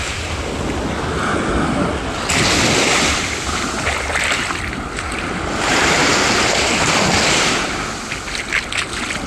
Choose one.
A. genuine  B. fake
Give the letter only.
A